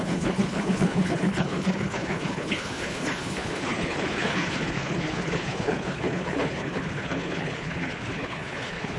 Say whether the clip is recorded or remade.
remade